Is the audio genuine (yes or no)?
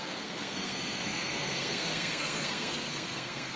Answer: no